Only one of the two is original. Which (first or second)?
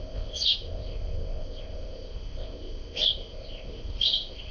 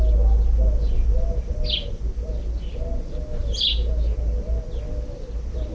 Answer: second